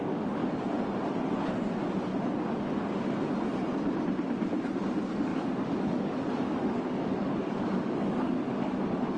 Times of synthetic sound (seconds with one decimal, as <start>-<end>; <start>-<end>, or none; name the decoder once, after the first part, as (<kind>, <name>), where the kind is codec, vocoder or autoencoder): 0.0-0.4 (codec, DAC); 4.8-9.2